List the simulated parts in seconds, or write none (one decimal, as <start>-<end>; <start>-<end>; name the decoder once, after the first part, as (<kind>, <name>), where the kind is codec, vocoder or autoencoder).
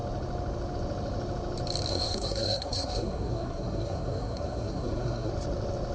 1.9-5.3 (codec, SNAC)